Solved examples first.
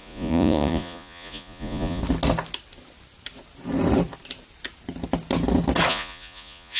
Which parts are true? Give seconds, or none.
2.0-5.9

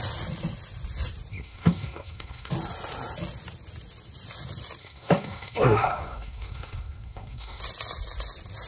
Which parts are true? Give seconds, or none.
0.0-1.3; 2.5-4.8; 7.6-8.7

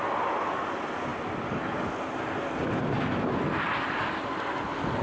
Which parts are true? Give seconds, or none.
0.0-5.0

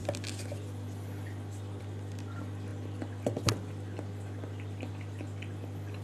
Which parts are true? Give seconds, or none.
0.0-6.0